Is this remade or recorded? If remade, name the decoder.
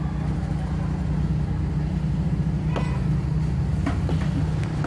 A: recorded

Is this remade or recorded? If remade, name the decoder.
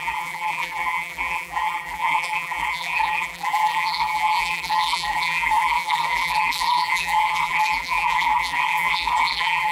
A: remade, vocoder, BigVGAN v2